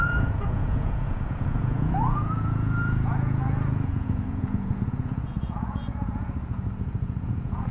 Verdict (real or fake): fake